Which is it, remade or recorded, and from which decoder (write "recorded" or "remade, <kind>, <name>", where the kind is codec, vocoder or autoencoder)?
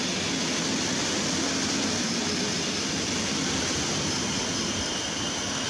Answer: recorded